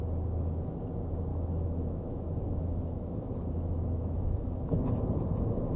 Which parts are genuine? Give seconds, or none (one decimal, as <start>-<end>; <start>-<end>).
0.0-1.3; 4.8-5.8